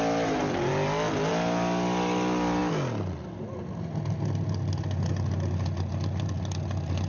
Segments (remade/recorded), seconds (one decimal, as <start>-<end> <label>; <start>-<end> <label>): 0.0-7.1 recorded